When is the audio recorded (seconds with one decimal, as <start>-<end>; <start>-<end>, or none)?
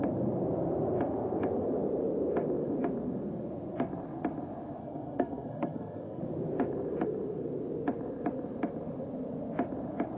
0.0-4.8; 6.2-10.2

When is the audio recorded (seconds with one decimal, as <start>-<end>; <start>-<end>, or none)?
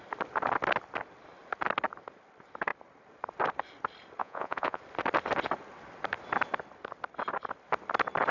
0.0-4.2; 4.8-8.3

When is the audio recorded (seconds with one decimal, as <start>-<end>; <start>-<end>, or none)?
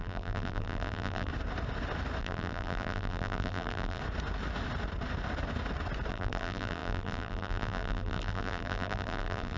1.3-2.2; 4.0-6.1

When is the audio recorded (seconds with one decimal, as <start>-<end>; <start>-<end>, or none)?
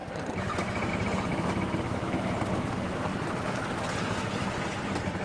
0.0-1.3; 2.3-5.2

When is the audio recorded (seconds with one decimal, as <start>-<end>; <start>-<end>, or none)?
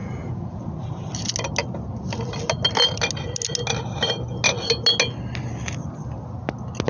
0.6-6.9